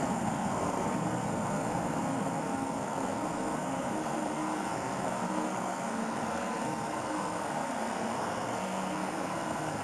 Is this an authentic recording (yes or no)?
no